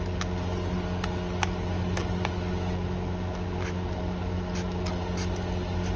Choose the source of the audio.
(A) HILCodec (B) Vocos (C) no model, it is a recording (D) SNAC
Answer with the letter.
C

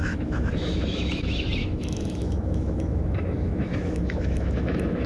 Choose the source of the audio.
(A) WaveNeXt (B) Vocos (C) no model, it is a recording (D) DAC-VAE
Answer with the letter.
D